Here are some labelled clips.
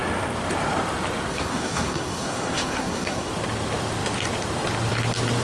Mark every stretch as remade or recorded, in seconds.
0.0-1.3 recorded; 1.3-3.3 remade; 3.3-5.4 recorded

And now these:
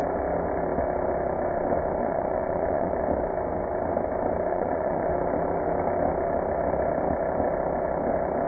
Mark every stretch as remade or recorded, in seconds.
0.0-2.0 recorded; 2.0-3.0 remade; 3.0-4.5 recorded; 4.5-5.1 remade; 5.1-8.5 recorded

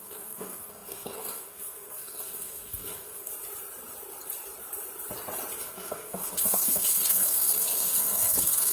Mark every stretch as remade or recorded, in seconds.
0.0-3.3 remade; 3.3-5.6 recorded; 5.6-8.7 remade

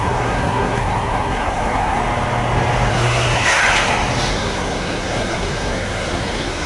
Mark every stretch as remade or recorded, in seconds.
0.0-2.0 remade; 2.0-2.9 recorded; 2.9-3.6 remade; 3.6-4.3 recorded; 4.3-6.7 remade

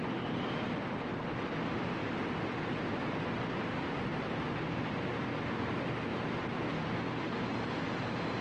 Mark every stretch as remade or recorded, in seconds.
0.0-4.1 remade; 4.1-5.6 recorded; 5.6-6.1 remade; 6.1-7.4 recorded; 7.4-8.4 remade

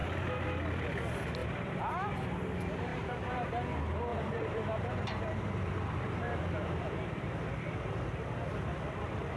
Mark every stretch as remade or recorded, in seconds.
0.0-1.4 recorded; 1.4-1.9 remade; 1.9-2.9 recorded; 2.9-3.5 remade; 3.5-4.1 recorded; 4.1-6.4 remade; 6.4-9.4 recorded